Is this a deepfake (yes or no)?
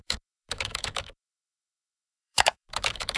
yes